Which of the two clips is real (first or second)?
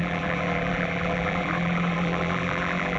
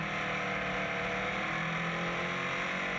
second